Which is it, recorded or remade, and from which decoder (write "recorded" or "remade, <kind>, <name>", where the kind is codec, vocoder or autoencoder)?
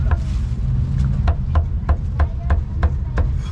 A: recorded